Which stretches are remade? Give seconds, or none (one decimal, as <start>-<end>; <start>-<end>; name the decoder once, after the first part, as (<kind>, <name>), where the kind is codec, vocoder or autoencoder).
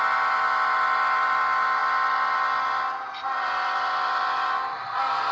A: none